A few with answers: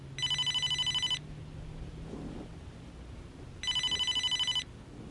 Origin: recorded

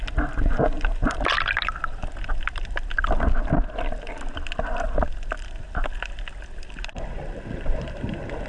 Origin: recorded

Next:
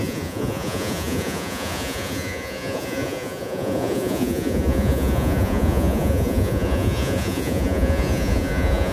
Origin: remade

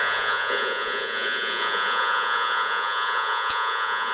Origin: remade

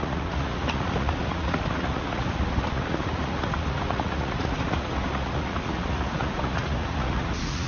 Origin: remade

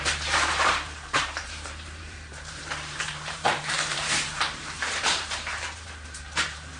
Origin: remade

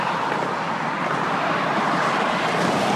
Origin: recorded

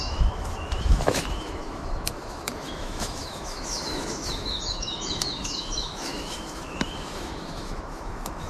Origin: remade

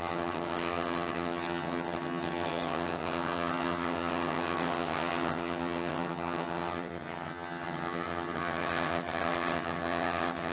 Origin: remade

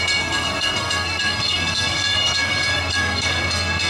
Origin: remade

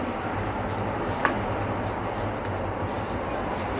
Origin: recorded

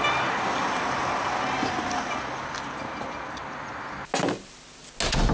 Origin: recorded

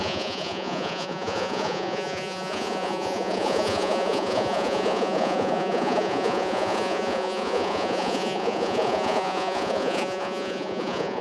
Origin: remade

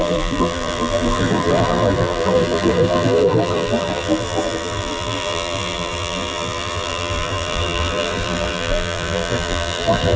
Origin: remade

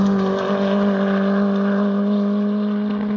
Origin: recorded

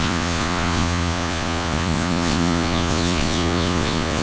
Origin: remade